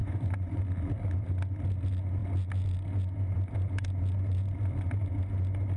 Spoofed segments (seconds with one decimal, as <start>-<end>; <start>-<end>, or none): 0.0-0.6